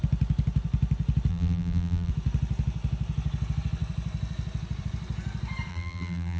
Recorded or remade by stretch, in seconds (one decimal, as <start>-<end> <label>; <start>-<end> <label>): 0.0-1.3 recorded; 1.3-2.1 remade; 2.1-5.7 recorded; 5.7-6.4 remade